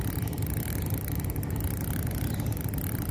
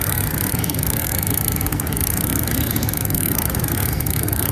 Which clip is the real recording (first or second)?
first